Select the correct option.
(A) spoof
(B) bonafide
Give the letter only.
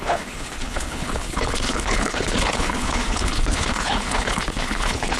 A